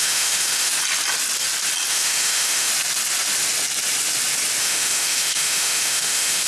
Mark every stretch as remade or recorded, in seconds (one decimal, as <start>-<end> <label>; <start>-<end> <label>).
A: 0.0-0.7 remade; 0.7-1.9 recorded; 1.9-2.7 remade; 2.7-4.6 recorded; 4.6-6.5 remade